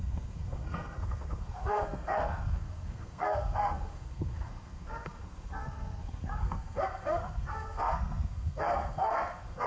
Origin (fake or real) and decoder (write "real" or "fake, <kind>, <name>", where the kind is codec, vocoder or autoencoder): fake, codec, SNAC